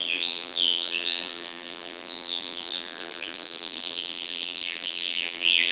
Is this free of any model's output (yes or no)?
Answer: no